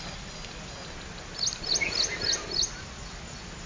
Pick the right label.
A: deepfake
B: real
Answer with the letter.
B